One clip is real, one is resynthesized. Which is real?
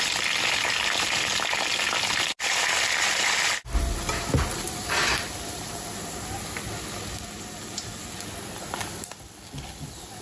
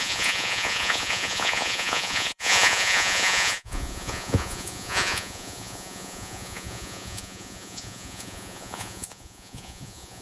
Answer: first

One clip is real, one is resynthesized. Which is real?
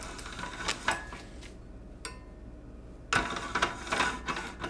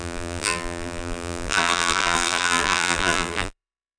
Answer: first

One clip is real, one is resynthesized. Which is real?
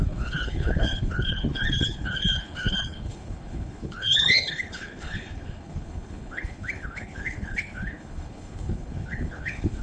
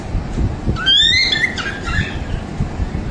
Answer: second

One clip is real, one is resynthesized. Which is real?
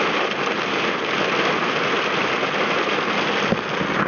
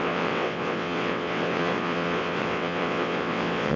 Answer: first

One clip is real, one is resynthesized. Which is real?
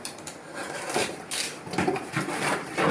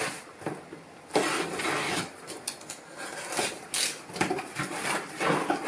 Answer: second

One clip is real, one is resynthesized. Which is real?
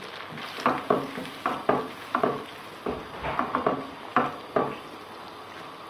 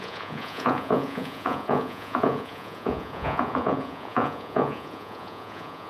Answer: first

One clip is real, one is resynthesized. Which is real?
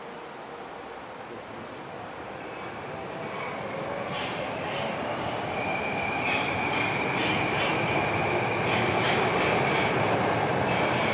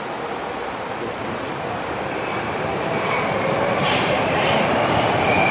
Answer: first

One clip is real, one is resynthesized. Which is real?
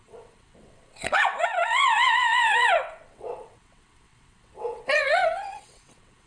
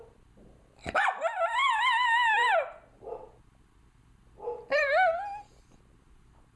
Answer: second